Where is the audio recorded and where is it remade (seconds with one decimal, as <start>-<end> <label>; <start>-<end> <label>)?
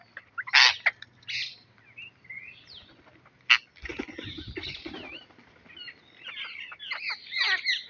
0.0-3.9 recorded; 3.9-7.1 remade; 7.1-7.9 recorded